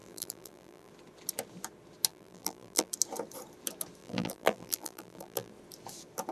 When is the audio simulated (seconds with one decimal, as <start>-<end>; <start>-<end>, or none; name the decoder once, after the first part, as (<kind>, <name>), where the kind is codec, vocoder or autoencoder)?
0.0-0.9 (vocoder, BigVGAN v2); 2.1-2.9; 4.0-5.5